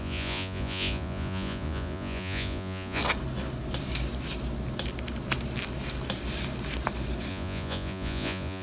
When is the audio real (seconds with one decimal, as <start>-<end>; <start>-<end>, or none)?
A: 3.0-7.3